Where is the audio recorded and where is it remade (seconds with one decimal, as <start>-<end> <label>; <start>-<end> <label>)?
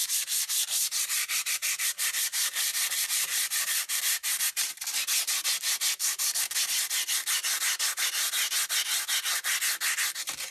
0.0-4.0 remade; 4.0-10.5 recorded